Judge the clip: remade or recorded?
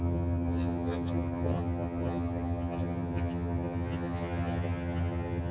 remade